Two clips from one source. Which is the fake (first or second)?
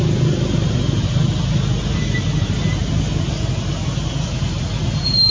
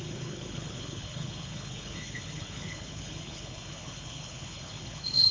second